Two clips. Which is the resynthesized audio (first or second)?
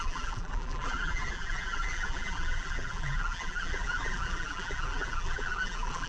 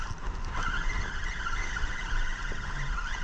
first